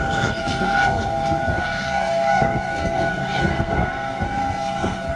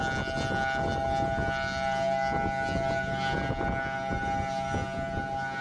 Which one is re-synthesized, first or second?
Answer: first